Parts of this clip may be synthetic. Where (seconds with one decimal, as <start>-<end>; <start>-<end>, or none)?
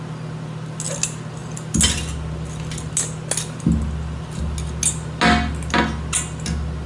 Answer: none